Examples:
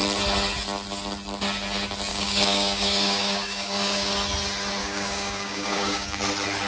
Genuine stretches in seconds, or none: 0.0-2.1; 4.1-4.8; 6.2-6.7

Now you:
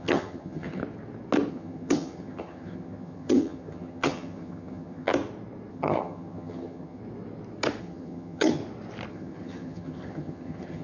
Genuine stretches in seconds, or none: 0.8-1.5; 5.1-5.7; 7.0-7.8; 8.6-9.1

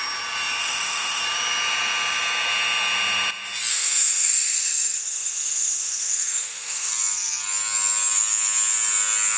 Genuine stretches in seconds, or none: 0.0-0.6; 1.2-3.7; 6.9-9.4

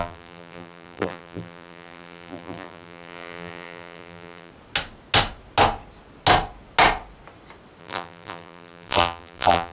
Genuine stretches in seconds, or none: 4.5-7.8

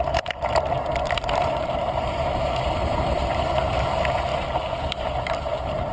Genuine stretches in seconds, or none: 4.3-4.9

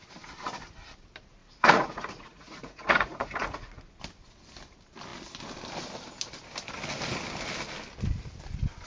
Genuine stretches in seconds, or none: 0.0-1.4; 4.0-8.9

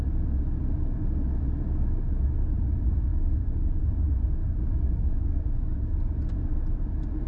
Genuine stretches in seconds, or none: 0.0-3.1; 3.8-4.4; 6.1-7.3

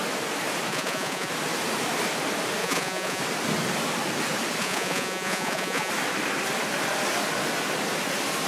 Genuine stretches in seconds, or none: 0.0-0.7; 1.3-2.6; 3.2-4.6; 5.9-8.5